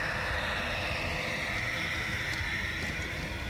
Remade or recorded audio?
recorded